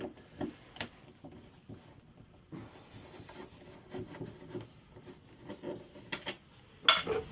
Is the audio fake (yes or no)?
no